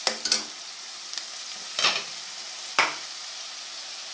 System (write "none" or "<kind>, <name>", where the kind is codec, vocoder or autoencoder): none